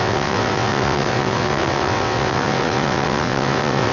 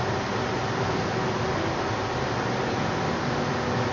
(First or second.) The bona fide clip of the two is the second